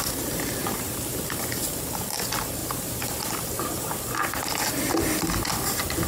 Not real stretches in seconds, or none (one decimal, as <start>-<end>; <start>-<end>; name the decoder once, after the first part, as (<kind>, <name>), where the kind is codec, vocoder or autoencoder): 0.6-1.7 (vocoder, BigVGAN v2); 2.6-3.9